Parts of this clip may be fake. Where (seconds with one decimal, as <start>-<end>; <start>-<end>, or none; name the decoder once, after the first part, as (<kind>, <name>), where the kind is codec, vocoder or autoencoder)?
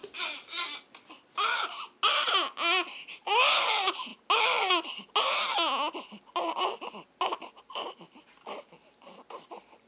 none